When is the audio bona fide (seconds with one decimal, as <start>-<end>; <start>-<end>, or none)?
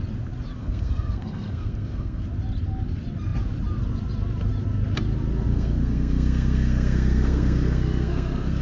0.0-0.6; 2.2-5.5